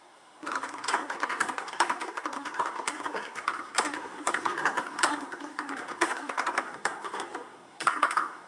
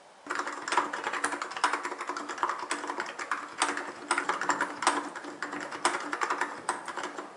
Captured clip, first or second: second